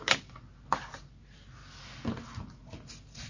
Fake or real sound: real